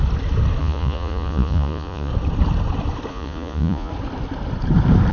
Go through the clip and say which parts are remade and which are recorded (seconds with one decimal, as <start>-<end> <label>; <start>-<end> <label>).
0.0-0.6 recorded; 0.6-2.1 remade; 2.1-3.1 recorded; 3.1-3.9 remade; 3.9-5.1 recorded